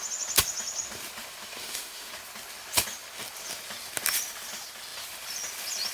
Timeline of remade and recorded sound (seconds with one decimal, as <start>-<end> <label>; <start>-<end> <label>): 0.0-1.6 recorded; 1.6-2.1 remade; 2.1-5.9 recorded